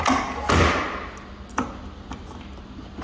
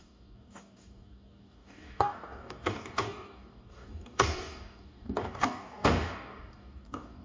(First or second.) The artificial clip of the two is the second